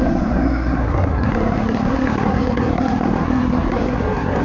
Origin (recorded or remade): remade